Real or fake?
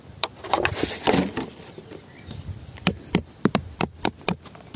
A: fake